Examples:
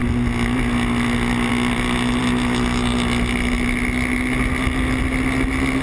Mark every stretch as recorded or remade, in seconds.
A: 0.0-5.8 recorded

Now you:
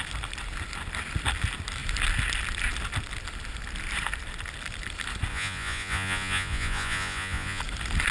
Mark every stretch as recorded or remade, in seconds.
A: 0.0-5.3 recorded; 5.3-7.6 remade; 7.6-8.1 recorded

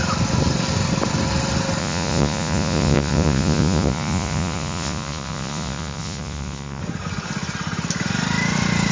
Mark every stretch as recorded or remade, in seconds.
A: 0.0-1.8 recorded; 1.8-6.8 remade; 6.8-8.9 recorded

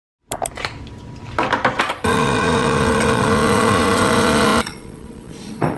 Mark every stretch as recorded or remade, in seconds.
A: 0.0-1.8 recorded; 1.8-5.8 remade

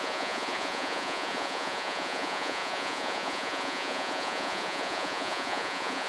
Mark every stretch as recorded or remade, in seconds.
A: 0.0-6.1 remade